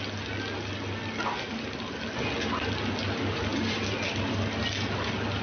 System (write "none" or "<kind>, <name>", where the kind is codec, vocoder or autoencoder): none